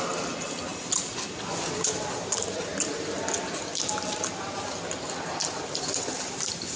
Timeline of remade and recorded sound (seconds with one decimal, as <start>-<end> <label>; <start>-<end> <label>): 0.0-6.8 recorded